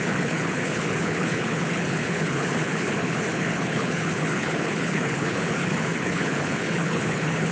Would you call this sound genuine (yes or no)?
no